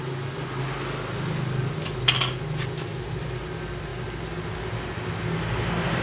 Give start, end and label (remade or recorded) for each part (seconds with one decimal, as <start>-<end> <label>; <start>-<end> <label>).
0.0-6.0 recorded